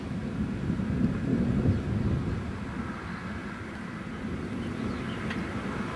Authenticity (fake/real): real